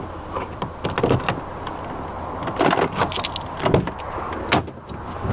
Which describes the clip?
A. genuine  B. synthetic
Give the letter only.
A